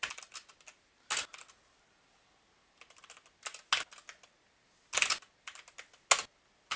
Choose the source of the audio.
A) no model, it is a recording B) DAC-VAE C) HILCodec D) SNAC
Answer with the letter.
A